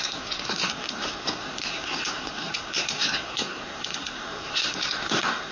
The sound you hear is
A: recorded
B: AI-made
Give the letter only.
B